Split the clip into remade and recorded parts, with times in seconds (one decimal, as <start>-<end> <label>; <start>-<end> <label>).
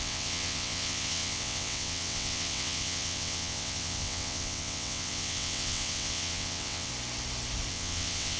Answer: 0.0-6.9 remade; 6.9-7.7 recorded; 7.7-8.4 remade